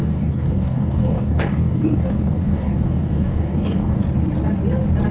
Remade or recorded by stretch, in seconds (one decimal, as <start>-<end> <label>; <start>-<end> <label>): 0.0-4.0 remade; 4.0-5.1 recorded

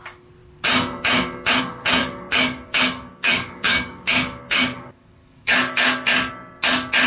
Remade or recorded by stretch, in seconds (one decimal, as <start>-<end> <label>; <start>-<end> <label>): 0.0-2.0 recorded; 2.0-6.3 remade; 6.3-7.1 recorded

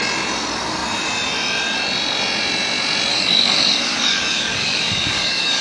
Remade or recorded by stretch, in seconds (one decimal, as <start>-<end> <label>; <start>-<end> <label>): 0.0-3.1 recorded; 3.1-5.6 remade

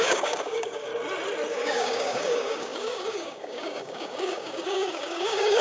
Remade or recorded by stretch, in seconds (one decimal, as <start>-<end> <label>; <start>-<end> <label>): 0.0-0.9 remade; 0.9-1.5 recorded; 1.5-5.6 remade

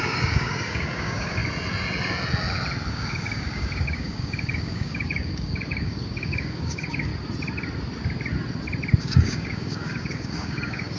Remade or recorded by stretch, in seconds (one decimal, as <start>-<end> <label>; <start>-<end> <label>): 0.0-1.4 remade; 1.4-2.9 recorded; 2.9-7.1 remade; 7.1-9.0 recorded; 9.0-11.0 remade